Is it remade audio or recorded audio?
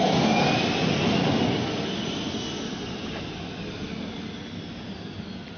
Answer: recorded